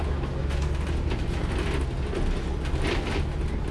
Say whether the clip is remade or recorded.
recorded